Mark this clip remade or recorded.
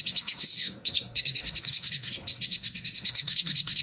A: remade